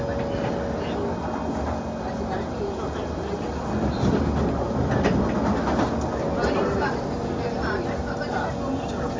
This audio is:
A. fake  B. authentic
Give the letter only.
B